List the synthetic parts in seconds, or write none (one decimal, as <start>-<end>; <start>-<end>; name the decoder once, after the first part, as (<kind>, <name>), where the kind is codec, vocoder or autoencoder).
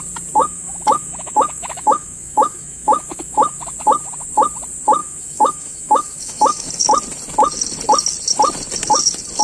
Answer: 0.4-3.6 (autoencoder, DAC-VAE); 5.0-6.7